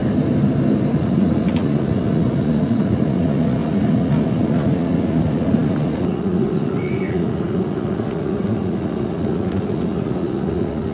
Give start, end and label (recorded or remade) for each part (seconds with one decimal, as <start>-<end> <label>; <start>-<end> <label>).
0.0-0.9 recorded; 0.9-10.9 remade